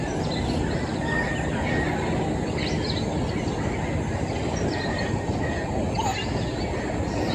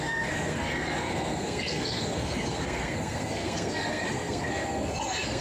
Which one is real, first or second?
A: first